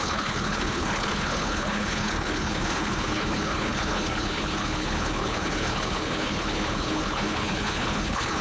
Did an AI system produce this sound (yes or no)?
yes